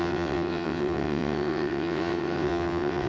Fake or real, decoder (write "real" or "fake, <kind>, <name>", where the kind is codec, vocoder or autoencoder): fake, vocoder, WaveNeXt